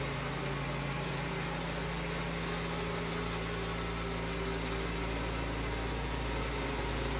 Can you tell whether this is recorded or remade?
recorded